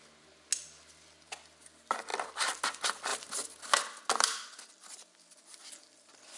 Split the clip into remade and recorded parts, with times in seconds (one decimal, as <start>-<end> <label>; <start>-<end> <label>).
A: 0.0-6.4 recorded